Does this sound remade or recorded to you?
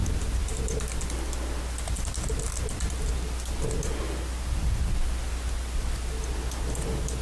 recorded